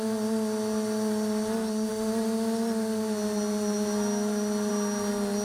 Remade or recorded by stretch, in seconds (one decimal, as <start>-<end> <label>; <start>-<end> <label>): 0.0-5.4 recorded